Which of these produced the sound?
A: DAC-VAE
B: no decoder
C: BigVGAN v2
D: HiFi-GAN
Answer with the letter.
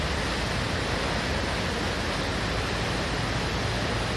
B